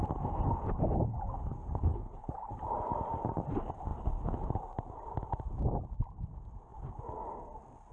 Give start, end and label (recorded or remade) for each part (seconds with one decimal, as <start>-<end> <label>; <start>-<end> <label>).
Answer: 0.0-1.9 recorded; 1.9-2.5 remade; 2.5-7.9 recorded